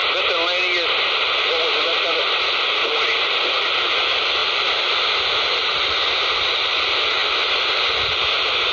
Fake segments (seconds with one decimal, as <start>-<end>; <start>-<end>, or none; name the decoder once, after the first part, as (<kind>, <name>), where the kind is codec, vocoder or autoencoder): 4.4-5.2 (vocoder, BigVGAN v2)